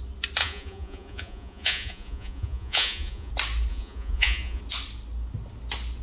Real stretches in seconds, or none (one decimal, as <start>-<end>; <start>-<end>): 0.0-0.4; 3.3-3.7; 4.6-6.0